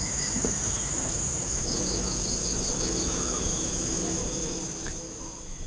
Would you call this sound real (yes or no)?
no